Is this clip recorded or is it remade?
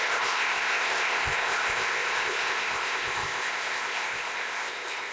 remade